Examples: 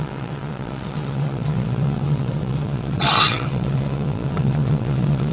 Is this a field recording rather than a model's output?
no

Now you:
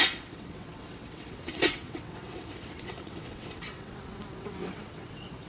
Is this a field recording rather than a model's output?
no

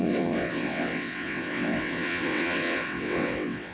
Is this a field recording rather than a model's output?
no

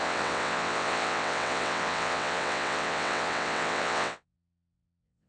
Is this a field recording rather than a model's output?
no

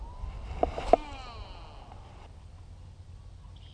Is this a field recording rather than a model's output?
yes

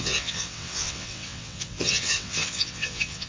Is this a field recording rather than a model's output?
no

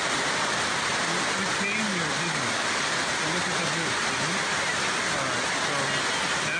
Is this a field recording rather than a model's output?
yes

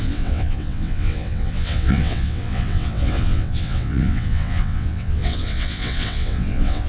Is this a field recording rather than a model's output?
no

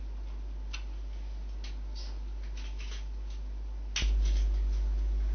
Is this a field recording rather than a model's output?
yes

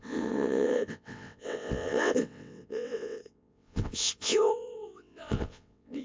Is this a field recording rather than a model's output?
no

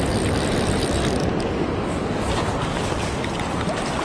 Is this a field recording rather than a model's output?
yes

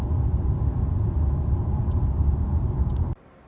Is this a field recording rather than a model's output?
yes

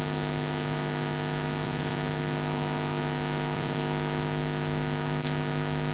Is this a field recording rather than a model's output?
yes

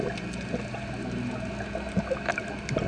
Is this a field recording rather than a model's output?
yes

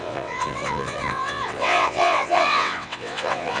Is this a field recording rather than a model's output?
no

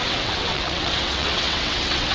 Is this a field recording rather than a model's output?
no